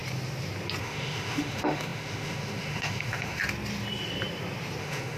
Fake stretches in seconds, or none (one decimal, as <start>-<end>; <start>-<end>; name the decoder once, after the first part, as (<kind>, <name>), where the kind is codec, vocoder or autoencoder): 0.8-3.4 (autoencoder, DAC-VAE); 4.8-5.2